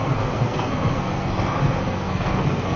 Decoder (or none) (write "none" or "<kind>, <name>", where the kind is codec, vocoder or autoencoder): codec, SNAC